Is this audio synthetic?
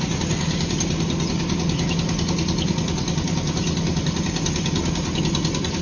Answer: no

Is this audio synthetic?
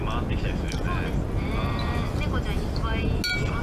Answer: no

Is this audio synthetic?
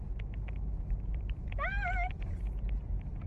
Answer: no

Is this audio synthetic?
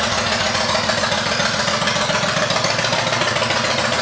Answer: no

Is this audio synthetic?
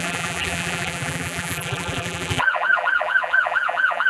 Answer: yes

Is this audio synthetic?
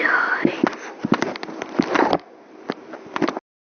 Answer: no